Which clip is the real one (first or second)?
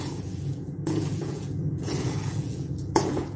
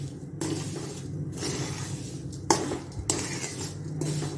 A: second